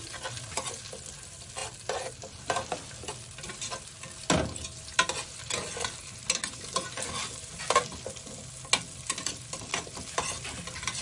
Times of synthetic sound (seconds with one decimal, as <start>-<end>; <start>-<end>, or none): none